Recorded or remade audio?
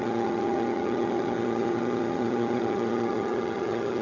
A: remade